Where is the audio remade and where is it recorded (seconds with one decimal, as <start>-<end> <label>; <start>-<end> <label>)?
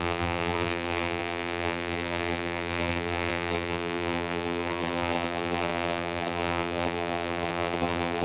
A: 0.0-8.2 remade